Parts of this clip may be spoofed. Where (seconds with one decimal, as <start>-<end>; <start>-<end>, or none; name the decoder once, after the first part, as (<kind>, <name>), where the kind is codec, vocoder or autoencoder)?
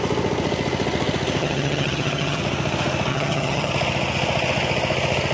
1.4-2.4 (vocoder, HiFi-GAN); 3.1-3.7